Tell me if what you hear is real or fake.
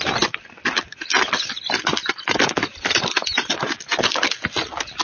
real